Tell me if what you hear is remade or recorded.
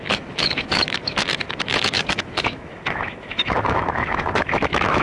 remade